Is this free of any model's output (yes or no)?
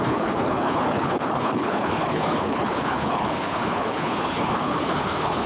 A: no